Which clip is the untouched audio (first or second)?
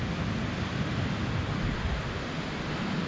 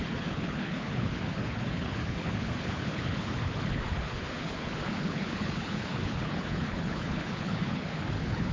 first